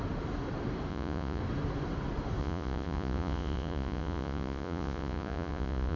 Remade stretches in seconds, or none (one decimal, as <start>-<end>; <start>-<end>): 0.9-1.4; 2.4-6.0